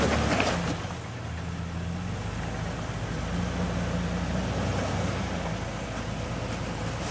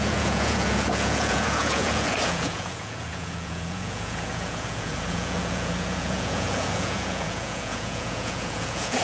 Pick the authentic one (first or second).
first